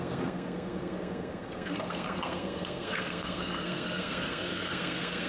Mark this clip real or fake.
fake